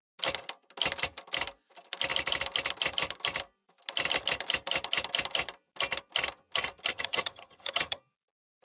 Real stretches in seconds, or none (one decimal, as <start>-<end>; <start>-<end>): 0.0-6.9; 8.0-8.6